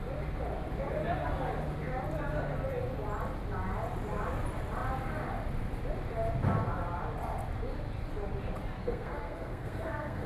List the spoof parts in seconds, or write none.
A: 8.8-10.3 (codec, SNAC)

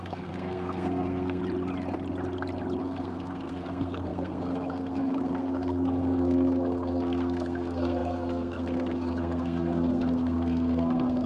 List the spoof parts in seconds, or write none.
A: 0.0-1.4 (codec, SNAC); 2.8-11.3

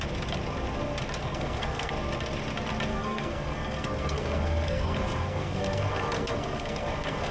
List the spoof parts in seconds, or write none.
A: 1.2-1.9 (codec, SNAC); 2.9-7.3

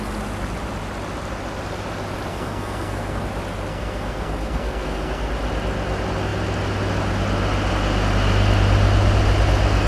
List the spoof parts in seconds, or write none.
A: 2.3-3.2 (codec, SNAC); 3.7-5.3

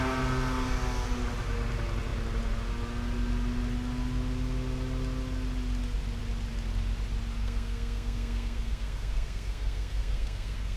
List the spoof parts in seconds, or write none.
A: 7.4-10.8 (codec, SNAC)